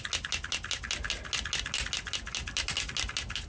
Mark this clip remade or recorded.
recorded